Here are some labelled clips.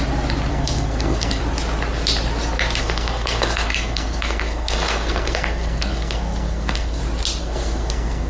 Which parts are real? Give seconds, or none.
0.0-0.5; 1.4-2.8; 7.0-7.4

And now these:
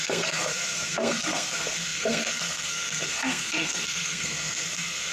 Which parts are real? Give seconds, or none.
none

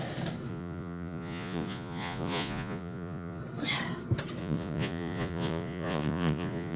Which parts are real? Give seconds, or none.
0.0-0.5; 3.4-4.4

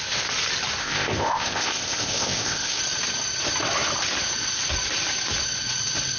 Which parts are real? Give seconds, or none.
0.0-0.8; 2.8-6.2

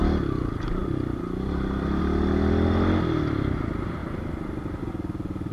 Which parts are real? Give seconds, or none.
0.0-5.5